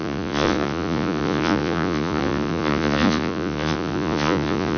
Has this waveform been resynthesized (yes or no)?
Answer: yes